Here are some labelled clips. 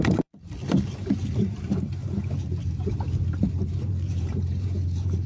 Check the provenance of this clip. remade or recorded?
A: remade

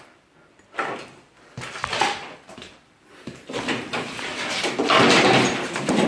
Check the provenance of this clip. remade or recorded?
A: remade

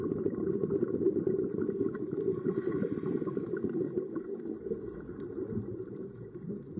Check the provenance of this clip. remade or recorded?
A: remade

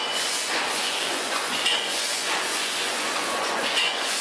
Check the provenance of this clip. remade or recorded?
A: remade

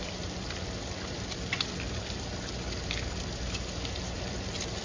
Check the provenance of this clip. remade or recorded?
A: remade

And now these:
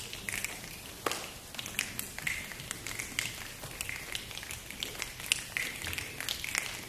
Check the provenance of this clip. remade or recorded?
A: recorded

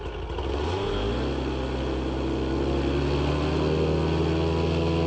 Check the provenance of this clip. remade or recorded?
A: recorded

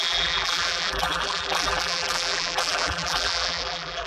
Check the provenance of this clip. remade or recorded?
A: remade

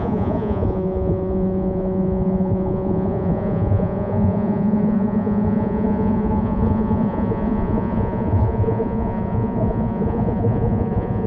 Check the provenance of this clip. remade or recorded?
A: remade